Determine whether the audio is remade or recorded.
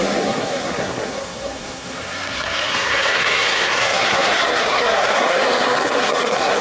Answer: remade